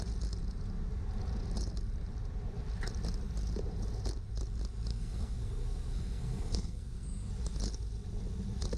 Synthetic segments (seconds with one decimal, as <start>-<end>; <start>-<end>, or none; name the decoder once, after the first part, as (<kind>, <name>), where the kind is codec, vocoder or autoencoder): 4.9-7.3 (codec, SNAC)